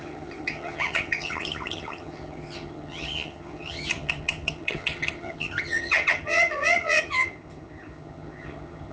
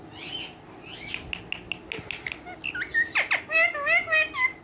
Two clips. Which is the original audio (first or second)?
second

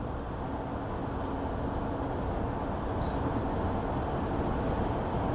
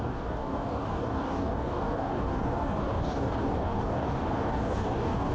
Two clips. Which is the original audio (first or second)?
first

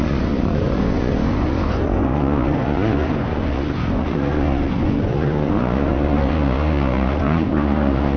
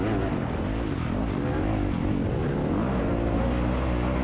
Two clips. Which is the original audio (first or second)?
second